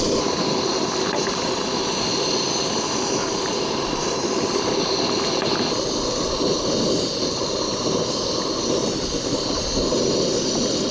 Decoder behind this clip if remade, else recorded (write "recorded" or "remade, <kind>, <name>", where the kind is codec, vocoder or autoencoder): recorded